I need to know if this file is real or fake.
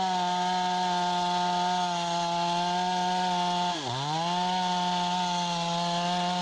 real